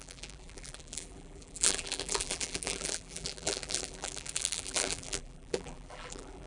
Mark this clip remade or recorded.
remade